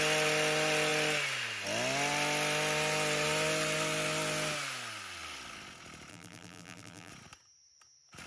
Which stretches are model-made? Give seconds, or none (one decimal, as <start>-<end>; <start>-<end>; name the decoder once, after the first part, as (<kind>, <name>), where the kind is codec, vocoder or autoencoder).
6.1-7.1 (vocoder, BigVGAN v2)